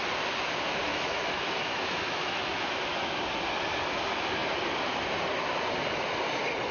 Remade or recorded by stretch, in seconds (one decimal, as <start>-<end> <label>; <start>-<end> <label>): 0.0-0.9 recorded; 0.9-3.2 remade; 3.2-6.7 recorded